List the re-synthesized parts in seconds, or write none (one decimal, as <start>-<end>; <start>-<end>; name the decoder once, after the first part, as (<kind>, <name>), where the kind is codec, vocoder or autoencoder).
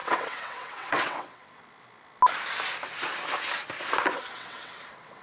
0.0-1.6 (vocoder, WaveNeXt); 4.1-5.2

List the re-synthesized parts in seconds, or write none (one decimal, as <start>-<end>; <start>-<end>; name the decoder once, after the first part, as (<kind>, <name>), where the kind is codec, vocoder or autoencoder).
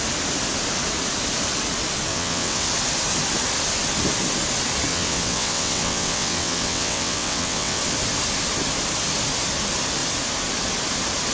2.1-2.7 (vocoder, WaveNeXt); 4.9-7.8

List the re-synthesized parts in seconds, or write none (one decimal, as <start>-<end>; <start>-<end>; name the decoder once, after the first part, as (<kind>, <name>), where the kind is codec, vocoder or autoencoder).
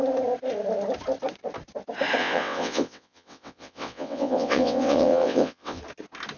2.2-5.8 (vocoder, WaveNeXt)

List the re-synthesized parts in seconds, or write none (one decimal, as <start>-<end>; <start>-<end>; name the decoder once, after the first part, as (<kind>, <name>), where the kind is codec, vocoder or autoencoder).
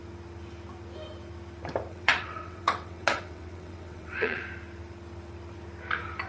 1.9-4.4 (vocoder, WaveNeXt)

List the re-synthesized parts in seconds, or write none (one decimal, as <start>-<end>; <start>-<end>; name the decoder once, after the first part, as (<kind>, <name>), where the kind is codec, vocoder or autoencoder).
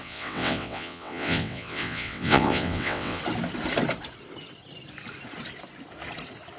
0.0-3.2 (vocoder, WaveNeXt)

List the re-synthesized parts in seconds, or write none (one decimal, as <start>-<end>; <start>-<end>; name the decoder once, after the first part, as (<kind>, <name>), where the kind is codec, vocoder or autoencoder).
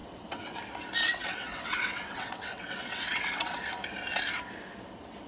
0.0-0.6 (vocoder, WaveNeXt); 1.1-3.6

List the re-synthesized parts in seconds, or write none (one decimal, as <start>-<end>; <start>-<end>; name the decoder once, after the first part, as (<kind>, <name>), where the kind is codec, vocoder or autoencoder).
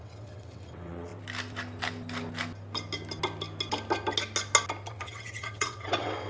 0.0-1.1 (vocoder, WaveNeXt); 4.9-6.3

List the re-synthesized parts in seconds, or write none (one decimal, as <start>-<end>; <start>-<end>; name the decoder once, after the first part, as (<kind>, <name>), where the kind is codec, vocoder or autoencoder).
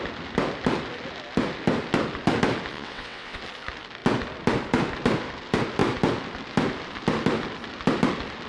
2.7-3.4 (vocoder, WaveNeXt)